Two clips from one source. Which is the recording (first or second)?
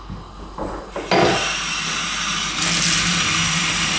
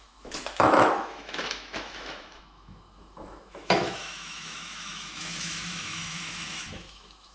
first